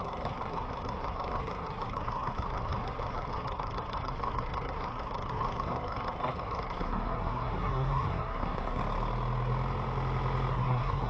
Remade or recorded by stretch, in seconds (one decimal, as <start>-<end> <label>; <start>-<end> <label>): 0.0-8.8 remade; 8.8-10.5 recorded; 10.5-11.1 remade